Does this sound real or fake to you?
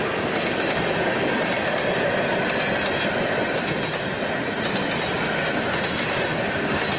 real